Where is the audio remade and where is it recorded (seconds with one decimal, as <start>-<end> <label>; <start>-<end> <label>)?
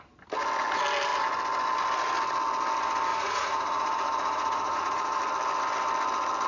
0.0-3.1 recorded; 3.1-5.2 remade; 5.2-6.5 recorded